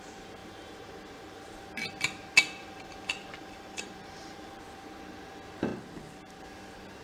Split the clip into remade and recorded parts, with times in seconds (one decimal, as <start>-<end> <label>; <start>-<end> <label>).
0.0-0.4 recorded; 0.4-1.6 remade; 1.6-2.6 recorded; 2.6-4.6 remade; 4.6-7.0 recorded